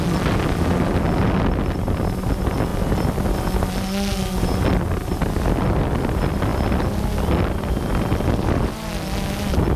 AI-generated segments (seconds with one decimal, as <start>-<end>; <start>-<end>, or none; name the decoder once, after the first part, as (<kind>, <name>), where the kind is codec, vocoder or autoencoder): none